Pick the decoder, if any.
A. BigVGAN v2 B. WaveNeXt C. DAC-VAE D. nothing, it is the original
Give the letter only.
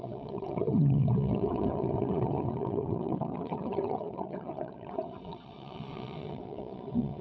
B